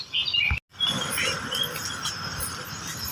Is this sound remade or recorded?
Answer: recorded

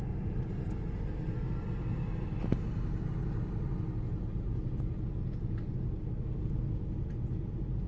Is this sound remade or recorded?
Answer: recorded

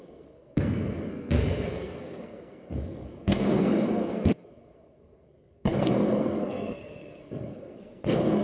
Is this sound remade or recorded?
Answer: remade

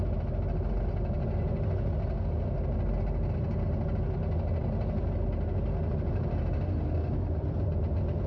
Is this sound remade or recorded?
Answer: recorded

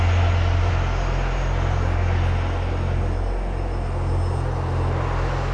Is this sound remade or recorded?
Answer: recorded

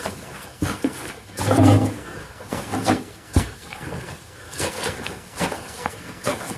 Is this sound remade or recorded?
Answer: remade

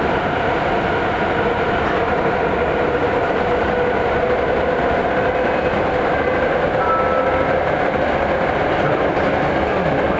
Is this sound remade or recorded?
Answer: recorded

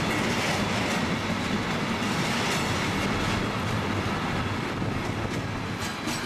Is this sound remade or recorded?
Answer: recorded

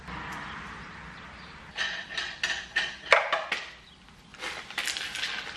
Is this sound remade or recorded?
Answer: recorded